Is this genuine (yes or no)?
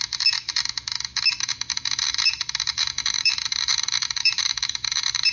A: no